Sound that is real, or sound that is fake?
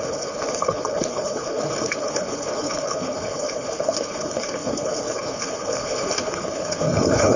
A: fake